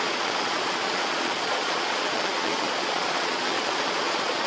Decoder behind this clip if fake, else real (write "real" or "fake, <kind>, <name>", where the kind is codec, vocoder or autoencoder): fake, vocoder, Vocos